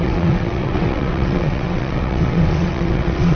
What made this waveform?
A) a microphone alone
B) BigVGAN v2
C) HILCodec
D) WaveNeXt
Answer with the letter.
D